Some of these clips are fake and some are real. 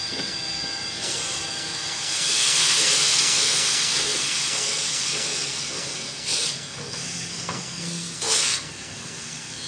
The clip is fake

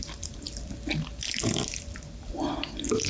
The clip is real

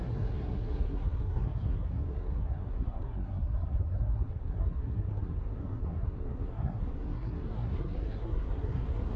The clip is fake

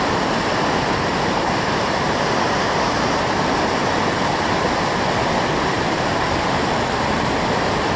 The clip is real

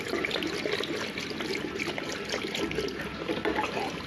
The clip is real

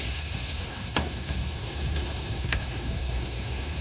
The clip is fake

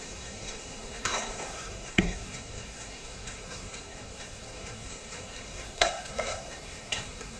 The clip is fake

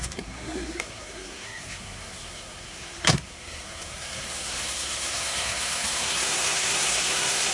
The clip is fake